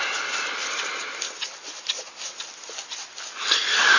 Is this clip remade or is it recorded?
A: remade